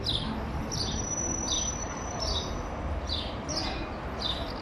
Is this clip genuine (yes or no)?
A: yes